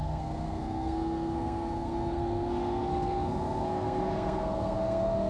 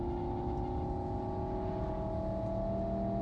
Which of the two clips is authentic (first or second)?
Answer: second